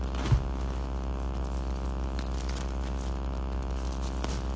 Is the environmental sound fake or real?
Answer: real